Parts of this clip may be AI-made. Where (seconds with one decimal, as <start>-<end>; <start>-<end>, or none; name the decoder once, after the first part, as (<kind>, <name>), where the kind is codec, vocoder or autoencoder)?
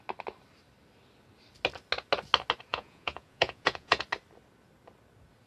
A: 2.7-4.0 (vocoder, Vocos)